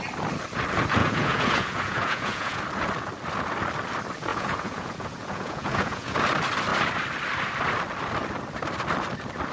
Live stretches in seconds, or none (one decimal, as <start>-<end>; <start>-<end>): 0.0-1.0; 2.6-4.3; 6.2-9.5

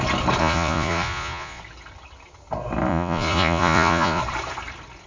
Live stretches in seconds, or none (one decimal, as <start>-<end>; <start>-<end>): 0.0-0.4; 1.6-2.9; 4.2-5.1